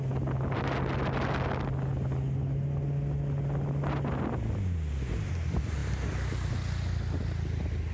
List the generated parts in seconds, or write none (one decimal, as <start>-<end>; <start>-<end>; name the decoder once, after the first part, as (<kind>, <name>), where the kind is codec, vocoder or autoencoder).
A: none